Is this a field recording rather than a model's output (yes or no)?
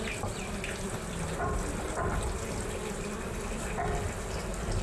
yes